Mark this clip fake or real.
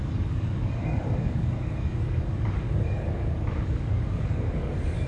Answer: fake